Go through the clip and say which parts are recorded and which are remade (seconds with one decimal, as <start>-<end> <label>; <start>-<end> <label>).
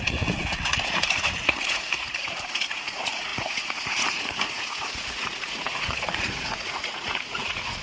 0.0-7.8 remade